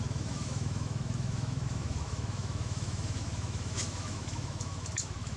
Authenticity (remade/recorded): remade